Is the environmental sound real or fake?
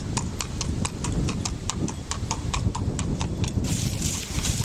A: fake